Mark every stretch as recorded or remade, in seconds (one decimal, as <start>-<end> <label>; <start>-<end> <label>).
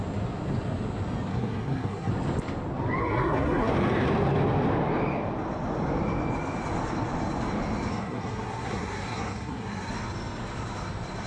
0.0-1.3 recorded; 1.3-2.1 remade; 2.1-3.0 recorded; 3.0-3.7 remade; 3.7-7.9 recorded; 7.9-9.9 remade; 9.9-11.3 recorded